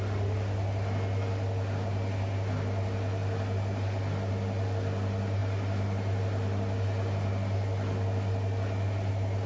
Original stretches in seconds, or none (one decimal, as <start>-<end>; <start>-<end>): 0.0-9.5